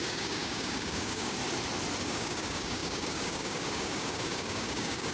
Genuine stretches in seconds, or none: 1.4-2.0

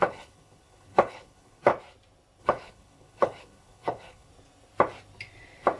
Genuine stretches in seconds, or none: 1.7-2.4; 4.3-5.8

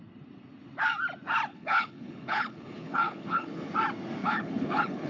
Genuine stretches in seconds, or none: 0.0-1.5; 3.7-4.2